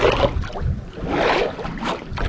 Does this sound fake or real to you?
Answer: real